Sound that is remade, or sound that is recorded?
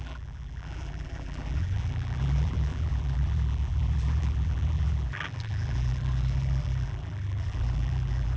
remade